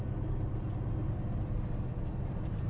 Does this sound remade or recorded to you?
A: recorded